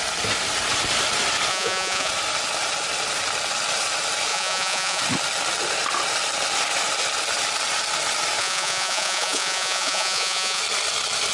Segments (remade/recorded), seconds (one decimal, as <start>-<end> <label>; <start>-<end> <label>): 0.0-1.5 recorded; 1.5-2.1 remade; 2.1-4.3 recorded; 4.3-5.0 remade; 5.0-8.4 recorded; 8.4-10.6 remade; 10.6-11.3 recorded